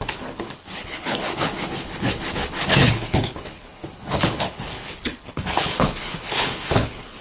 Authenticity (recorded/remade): remade